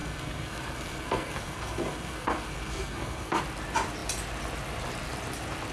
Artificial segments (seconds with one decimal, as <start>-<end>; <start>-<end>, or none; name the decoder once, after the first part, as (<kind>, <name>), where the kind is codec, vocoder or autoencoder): 0.0-3.4 (codec, SNAC)